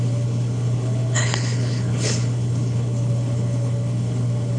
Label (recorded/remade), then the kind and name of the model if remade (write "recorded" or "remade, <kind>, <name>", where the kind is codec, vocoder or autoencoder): remade, codec, HILCodec